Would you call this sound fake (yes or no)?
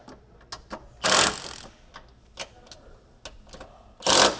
no